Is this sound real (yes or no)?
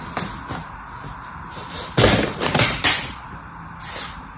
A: yes